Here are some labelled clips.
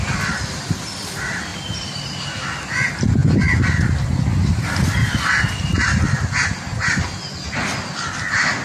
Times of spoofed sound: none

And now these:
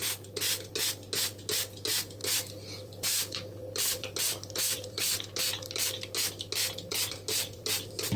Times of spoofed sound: 2.2-5.2 (vocoder, BigVGAN v2); 6.9-8.2